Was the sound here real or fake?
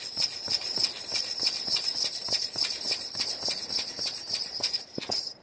real